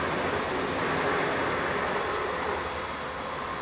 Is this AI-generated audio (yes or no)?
no